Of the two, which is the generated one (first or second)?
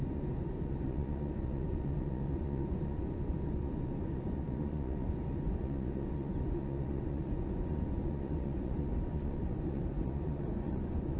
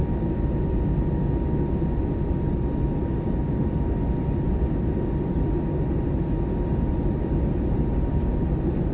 first